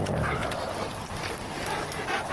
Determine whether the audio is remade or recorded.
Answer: recorded